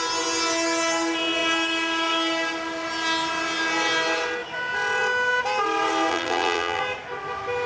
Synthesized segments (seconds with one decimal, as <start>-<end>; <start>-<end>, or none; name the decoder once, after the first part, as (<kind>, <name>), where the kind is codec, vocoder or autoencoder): 6.1-6.8 (vocoder, BigVGAN v2)